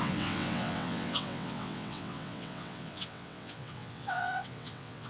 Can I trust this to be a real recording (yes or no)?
no